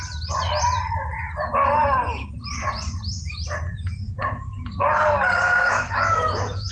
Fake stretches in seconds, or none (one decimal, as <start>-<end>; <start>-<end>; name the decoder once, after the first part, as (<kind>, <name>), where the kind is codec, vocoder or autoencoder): 3.7-4.7 (autoencoder, DAC-VAE); 5.6-6.7

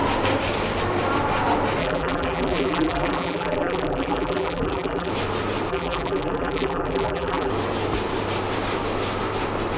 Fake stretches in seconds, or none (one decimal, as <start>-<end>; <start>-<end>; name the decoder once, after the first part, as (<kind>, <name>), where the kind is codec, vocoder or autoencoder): 1.8-5.1 (vocoder, BigVGAN v2); 5.7-7.5

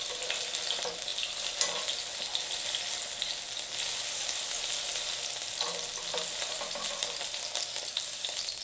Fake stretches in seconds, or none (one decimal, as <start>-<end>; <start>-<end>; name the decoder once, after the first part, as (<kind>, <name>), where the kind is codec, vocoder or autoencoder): none

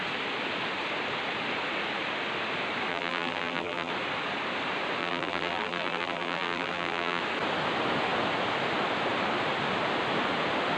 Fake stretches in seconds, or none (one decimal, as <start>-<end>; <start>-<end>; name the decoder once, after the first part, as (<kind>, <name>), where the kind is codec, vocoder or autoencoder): 2.9-3.9 (vocoder, BigVGAN v2); 5.0-7.2

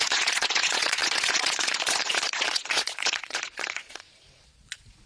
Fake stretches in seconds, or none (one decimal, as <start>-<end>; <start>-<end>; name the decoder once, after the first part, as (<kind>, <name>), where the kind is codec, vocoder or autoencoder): 0.0-5.1 (vocoder, Vocos)